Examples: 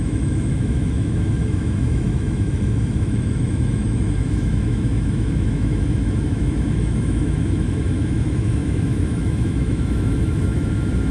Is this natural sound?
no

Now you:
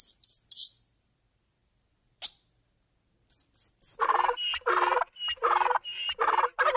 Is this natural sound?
yes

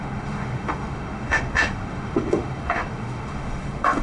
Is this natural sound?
no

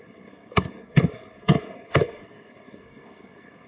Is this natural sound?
no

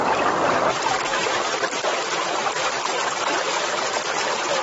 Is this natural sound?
yes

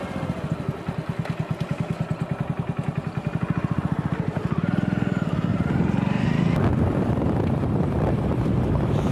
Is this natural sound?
yes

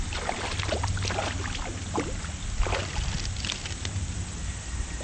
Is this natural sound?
yes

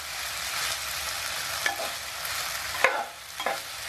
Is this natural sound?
yes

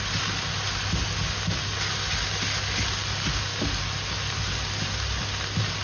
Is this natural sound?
yes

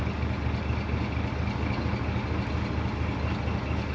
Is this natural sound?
yes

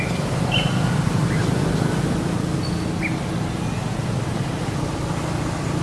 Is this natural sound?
yes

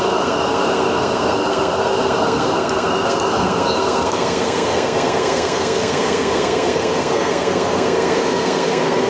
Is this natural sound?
no